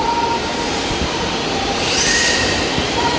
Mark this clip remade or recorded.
recorded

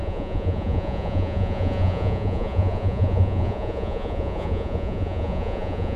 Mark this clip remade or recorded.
remade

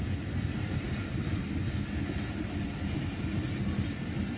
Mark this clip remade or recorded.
recorded